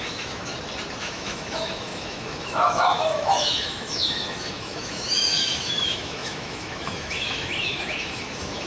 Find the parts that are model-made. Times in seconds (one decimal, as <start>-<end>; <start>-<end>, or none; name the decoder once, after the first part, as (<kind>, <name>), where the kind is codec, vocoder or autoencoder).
0.0-0.5 (autoencoder, DAC-VAE); 1.0-8.7